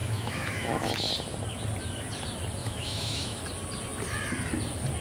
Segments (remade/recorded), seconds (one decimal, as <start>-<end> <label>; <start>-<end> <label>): 0.0-1.1 remade; 1.1-2.6 recorded; 2.6-3.4 remade; 3.4-5.0 recorded